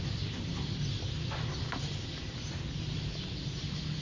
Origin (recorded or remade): recorded